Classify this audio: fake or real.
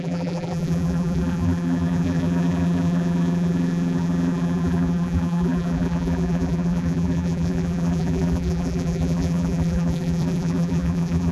fake